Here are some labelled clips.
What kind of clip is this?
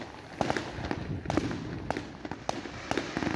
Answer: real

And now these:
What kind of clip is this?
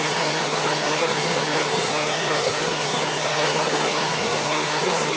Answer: fake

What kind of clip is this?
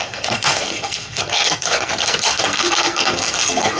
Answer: fake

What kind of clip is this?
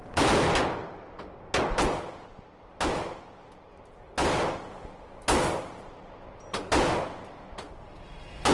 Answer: real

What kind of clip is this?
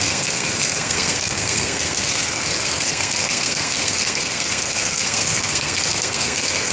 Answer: fake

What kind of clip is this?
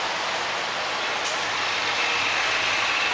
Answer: real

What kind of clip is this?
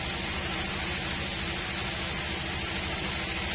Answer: real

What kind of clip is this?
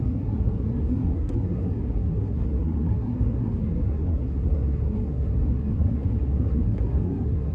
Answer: fake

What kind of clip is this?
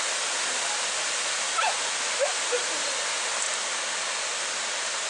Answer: real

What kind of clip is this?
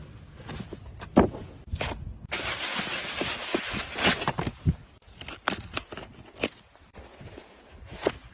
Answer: real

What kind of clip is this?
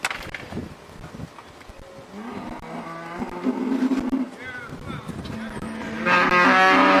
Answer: real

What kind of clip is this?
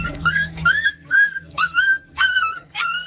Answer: fake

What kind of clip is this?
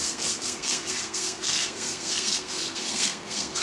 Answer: fake